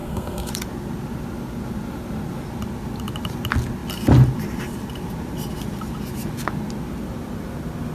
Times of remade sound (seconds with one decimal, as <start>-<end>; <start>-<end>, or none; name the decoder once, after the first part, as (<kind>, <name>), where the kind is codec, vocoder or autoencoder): 0.0-0.5 (codec, SNAC)